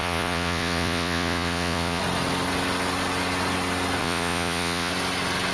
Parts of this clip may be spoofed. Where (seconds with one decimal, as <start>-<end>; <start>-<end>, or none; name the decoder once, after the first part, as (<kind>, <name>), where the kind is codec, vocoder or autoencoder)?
0.0-2.0 (vocoder, Vocos); 4.0-4.9